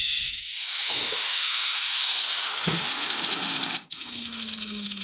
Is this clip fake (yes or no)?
yes